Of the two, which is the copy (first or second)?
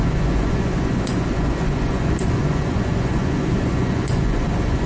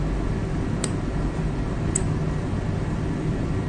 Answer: first